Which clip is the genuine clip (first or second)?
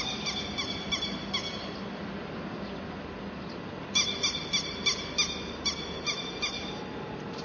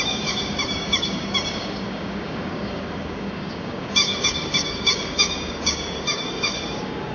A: first